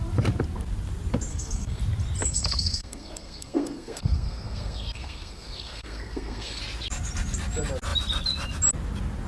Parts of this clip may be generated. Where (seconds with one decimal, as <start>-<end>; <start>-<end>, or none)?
1.3-1.8; 2.2-6.6